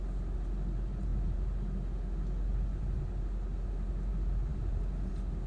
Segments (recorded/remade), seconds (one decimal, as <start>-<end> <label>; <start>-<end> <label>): 0.0-5.5 recorded

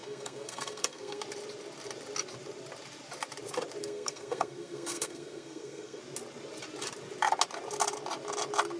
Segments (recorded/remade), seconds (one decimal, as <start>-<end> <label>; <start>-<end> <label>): 0.0-1.2 remade; 1.2-3.8 recorded; 3.8-6.0 remade; 6.0-8.8 recorded

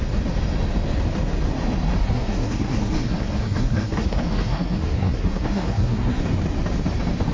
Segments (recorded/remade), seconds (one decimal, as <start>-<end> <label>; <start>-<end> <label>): 0.0-2.0 recorded; 2.0-6.2 remade; 6.2-7.3 recorded

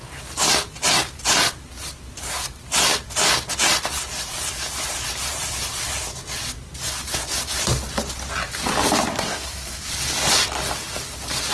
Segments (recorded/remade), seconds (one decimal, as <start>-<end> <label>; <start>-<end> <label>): 0.0-9.1 recorded; 9.1-9.9 remade; 9.9-11.5 recorded

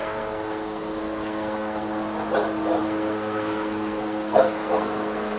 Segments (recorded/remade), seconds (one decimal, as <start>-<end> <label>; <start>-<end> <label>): 0.0-2.0 remade; 2.0-2.8 recorded; 2.8-5.4 remade

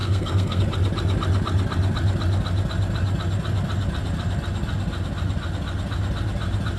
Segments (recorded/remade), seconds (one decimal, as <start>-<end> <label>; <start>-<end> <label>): 0.0-0.6 remade; 0.6-6.8 recorded